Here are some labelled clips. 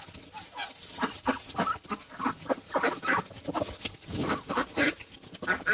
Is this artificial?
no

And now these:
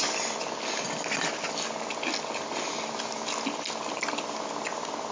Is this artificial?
no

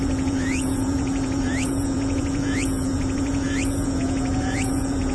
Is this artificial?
yes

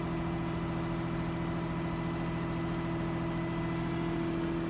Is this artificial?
no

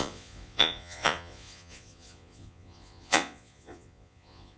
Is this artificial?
yes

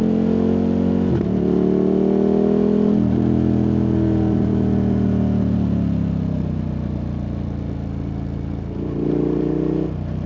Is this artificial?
no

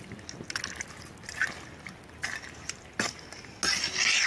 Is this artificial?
no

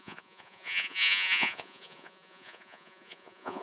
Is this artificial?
yes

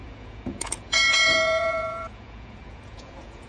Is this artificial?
yes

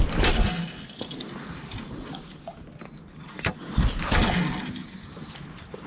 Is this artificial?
no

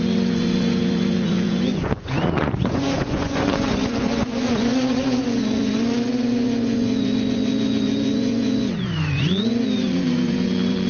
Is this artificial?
yes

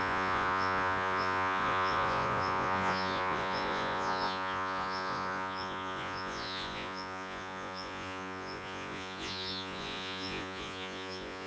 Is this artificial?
yes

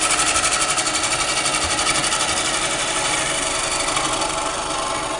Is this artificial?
no